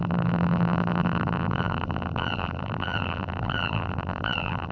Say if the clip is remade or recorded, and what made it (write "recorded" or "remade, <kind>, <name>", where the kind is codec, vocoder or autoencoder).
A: remade, vocoder, BigVGAN v2